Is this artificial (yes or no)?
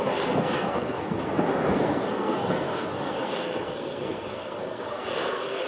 yes